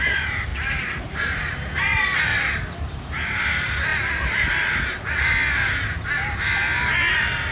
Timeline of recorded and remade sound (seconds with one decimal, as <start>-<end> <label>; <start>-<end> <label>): 0.0-7.5 recorded